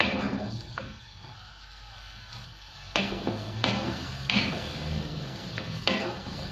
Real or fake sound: fake